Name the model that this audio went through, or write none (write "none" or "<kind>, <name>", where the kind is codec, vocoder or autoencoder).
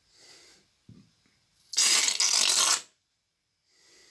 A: none